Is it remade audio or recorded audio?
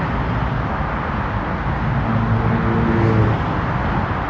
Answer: recorded